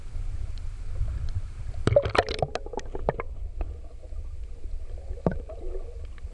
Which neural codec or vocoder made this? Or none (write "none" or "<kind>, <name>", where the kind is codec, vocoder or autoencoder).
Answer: none